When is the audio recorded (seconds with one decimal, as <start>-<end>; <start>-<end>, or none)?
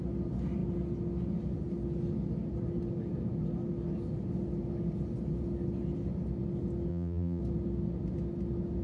0.0-6.9; 7.4-8.8